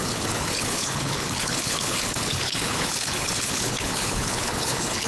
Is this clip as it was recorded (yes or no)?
no